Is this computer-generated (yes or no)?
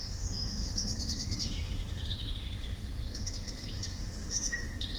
yes